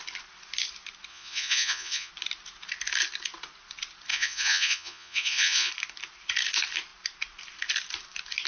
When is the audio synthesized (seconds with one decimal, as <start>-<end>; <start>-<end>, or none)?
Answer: 1.1-2.1; 4.1-5.7